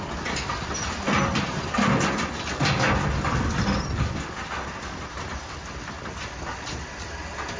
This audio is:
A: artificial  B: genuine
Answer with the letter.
B